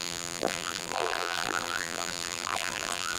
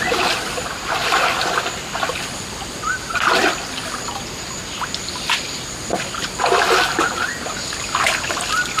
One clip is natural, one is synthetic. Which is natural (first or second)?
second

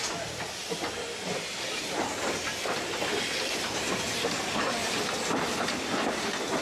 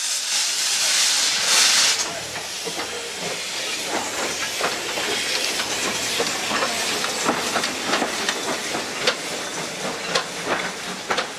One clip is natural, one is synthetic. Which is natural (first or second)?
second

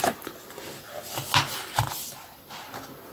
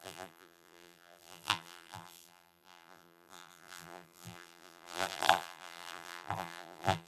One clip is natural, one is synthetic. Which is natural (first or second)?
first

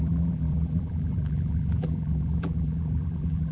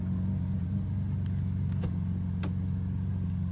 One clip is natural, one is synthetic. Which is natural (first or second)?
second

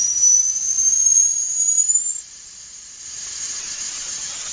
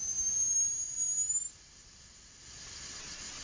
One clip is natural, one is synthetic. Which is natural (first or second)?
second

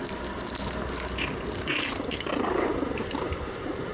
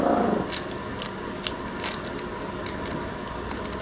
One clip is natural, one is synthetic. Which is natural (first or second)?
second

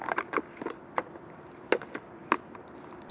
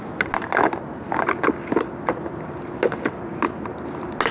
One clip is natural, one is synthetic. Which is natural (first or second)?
second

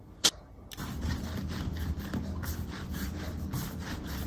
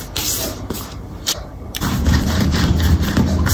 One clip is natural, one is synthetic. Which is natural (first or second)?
first